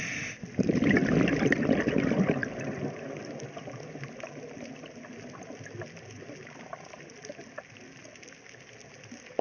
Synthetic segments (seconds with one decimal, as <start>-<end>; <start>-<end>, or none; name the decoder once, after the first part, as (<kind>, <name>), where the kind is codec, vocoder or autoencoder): none